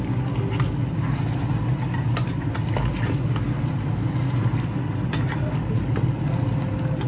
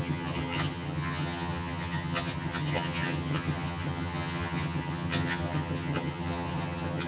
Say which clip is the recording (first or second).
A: first